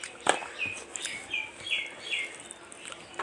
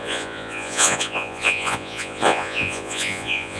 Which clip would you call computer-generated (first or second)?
second